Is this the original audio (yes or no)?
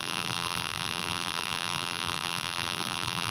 no